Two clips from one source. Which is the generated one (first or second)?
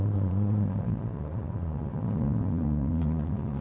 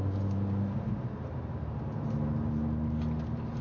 first